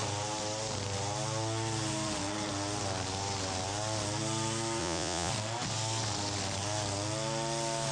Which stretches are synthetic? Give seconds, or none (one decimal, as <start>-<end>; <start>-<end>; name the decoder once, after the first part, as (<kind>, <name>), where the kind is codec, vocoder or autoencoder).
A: 4.8-5.3 (vocoder, Vocos)